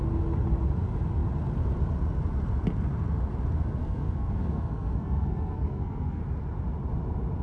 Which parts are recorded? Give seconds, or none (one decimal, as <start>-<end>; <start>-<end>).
0.0-3.8; 6.2-7.4